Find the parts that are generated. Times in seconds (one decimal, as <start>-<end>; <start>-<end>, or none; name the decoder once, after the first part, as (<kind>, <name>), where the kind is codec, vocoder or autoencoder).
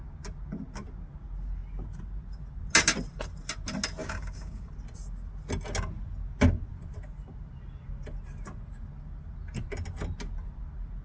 4.0-4.7 (codec, DAC)